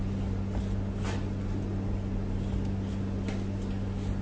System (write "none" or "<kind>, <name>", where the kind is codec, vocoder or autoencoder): none